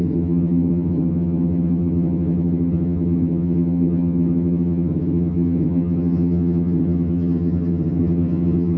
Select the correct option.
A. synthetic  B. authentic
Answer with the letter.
A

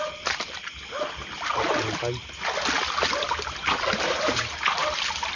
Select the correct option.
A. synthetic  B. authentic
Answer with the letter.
B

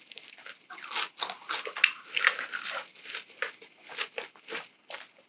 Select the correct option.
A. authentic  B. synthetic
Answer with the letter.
A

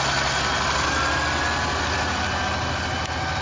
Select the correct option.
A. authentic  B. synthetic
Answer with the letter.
A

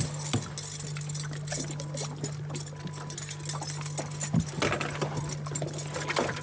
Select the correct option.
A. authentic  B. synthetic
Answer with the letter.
A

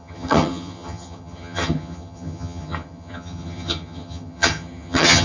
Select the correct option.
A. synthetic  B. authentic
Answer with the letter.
A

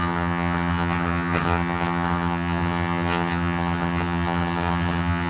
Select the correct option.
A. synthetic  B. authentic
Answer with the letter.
A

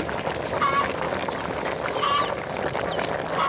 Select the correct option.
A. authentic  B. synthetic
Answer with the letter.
A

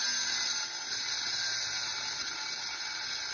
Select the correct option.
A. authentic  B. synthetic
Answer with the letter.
A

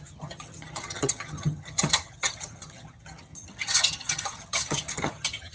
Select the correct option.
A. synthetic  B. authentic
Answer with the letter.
A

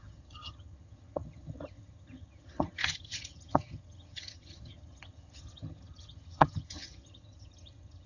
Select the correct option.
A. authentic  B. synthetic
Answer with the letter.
B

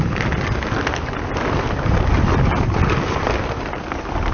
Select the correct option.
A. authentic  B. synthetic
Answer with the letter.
A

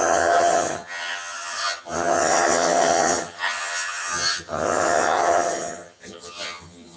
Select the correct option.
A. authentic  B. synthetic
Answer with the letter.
B